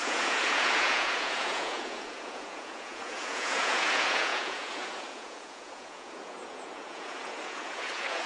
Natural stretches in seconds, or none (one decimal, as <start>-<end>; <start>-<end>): none